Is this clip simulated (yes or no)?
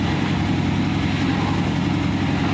no